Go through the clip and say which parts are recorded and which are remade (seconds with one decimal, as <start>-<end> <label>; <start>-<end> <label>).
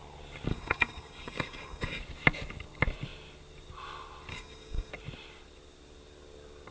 0.0-0.5 recorded; 0.5-2.0 remade; 2.0-4.3 recorded; 4.3-4.9 remade; 4.9-6.7 recorded